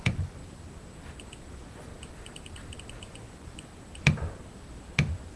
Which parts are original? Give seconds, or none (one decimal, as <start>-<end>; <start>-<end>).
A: 0.4-1.5; 1.9-3.1; 3.7-5.4